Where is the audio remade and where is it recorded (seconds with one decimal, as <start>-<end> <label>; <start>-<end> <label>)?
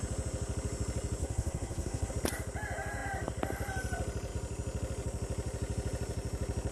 0.0-1.2 recorded; 1.2-2.1 remade; 2.1-6.7 recorded